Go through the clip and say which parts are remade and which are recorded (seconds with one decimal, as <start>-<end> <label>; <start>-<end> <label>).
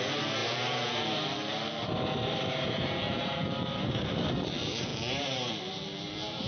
0.0-6.5 remade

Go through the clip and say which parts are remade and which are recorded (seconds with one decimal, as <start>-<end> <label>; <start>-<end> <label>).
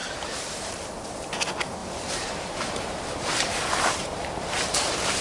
0.0-0.7 remade; 0.7-1.8 recorded; 1.8-5.2 remade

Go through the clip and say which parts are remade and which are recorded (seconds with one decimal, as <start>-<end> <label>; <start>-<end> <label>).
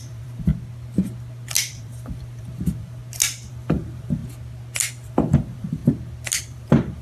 0.0-0.5 remade; 0.5-1.7 recorded; 1.7-3.0 remade; 3.0-3.5 recorded; 3.5-4.2 remade; 4.2-4.9 recorded; 4.9-5.8 remade; 5.8-6.4 recorded; 6.4-7.0 remade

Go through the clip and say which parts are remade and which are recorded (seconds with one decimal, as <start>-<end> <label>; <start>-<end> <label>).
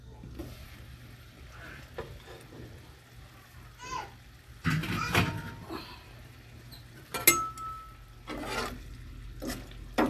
0.0-0.4 recorded; 0.4-1.4 remade; 1.4-4.8 recorded; 4.8-5.5 remade; 5.5-10.1 recorded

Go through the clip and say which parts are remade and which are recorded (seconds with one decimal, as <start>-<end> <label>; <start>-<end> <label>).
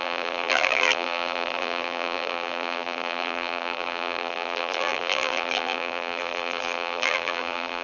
0.0-7.8 remade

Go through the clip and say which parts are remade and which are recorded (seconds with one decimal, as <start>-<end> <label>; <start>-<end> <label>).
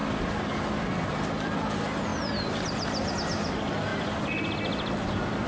0.0-1.1 recorded; 1.1-3.9 remade; 3.9-5.5 recorded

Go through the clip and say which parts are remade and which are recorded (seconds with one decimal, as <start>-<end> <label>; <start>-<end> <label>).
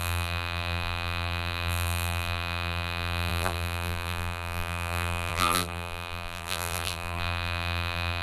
0.0-8.2 remade